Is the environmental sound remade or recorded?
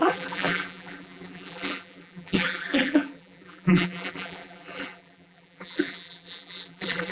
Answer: remade